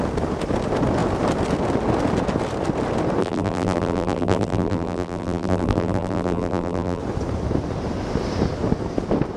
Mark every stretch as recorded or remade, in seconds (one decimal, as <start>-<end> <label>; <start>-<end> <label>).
0.0-3.2 recorded; 3.2-7.0 remade; 7.0-9.4 recorded